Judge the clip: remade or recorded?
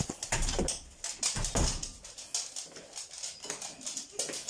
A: recorded